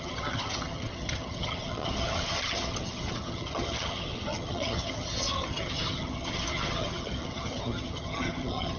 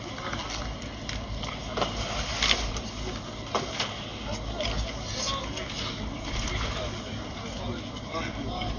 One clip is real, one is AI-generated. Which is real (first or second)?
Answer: second